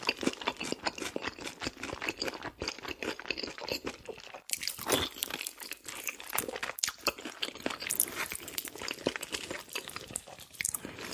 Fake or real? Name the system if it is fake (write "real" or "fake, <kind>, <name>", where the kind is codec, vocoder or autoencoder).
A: real